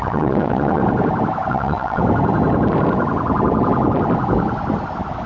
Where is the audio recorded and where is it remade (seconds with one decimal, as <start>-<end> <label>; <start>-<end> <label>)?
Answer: 0.0-0.8 remade; 0.8-1.5 recorded; 1.5-2.0 remade; 2.0-5.3 recorded